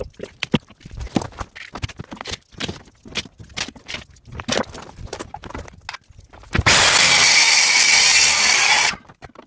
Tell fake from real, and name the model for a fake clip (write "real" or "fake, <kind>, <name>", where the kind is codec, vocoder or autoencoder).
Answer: real